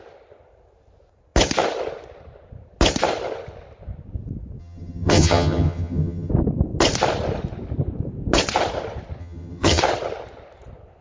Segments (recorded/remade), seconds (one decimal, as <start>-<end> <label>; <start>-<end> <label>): 0.0-4.6 recorded; 4.6-6.3 remade; 6.3-9.2 recorded; 9.2-9.8 remade; 9.8-11.0 recorded